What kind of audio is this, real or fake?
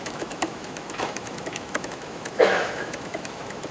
fake